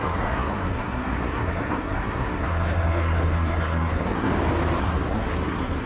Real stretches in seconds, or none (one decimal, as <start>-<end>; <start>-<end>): 4.3-4.8